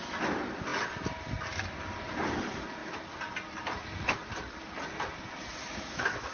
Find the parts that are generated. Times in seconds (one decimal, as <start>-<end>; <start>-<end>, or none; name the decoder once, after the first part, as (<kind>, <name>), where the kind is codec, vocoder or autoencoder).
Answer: 5.6-6.3 (autoencoder, DAC-VAE)